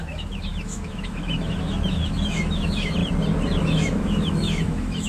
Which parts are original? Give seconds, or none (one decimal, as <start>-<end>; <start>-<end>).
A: 3.0-3.6